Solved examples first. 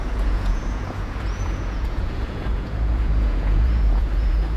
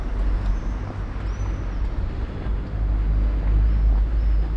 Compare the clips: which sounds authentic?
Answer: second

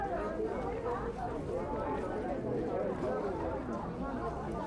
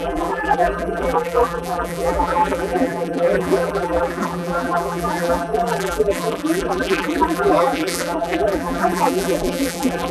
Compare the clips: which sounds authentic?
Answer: first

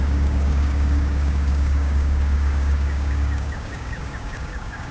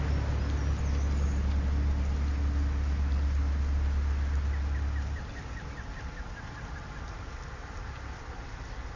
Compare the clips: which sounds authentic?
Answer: second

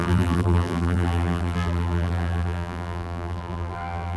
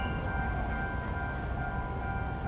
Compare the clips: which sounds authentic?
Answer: second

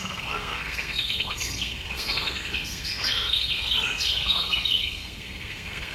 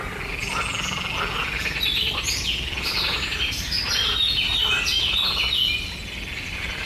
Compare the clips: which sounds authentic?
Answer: second